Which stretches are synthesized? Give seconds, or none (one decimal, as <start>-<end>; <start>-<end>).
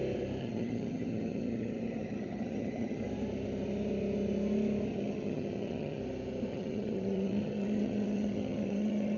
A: 0.4-3.0; 4.9-6.0; 6.5-9.2